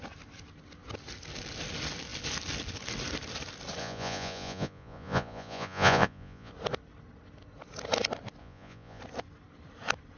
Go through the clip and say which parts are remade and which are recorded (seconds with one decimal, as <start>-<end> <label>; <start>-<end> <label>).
0.0-3.8 recorded; 3.8-6.5 remade; 6.5-8.4 recorded; 8.4-9.0 remade; 9.0-10.2 recorded